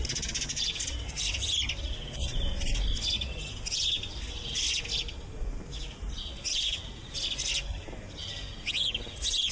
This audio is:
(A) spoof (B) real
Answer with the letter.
B